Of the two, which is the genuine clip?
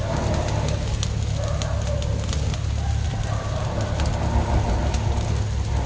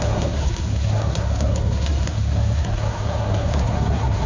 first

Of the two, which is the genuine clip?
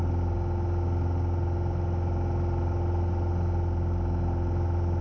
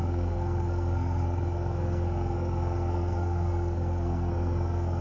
first